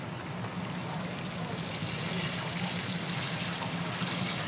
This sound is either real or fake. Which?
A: real